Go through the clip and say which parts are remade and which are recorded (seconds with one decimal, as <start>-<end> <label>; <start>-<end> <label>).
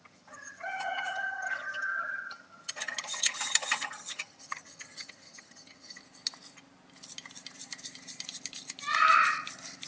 0.0-6.0 remade; 6.0-9.9 recorded